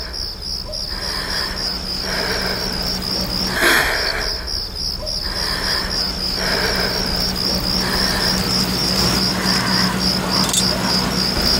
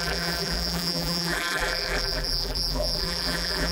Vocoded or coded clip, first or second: second